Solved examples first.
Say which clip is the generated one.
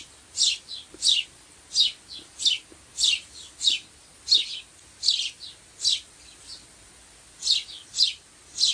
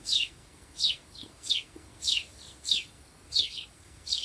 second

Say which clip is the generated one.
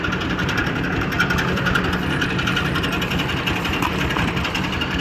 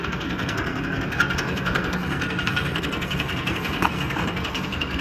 second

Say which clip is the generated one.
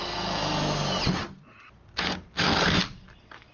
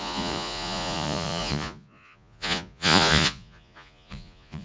second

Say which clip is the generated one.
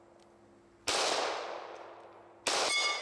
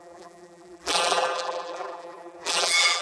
second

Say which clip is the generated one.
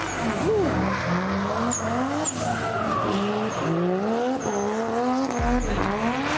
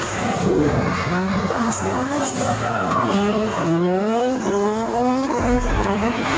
second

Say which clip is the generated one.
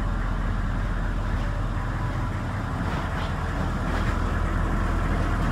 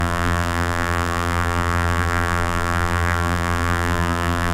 second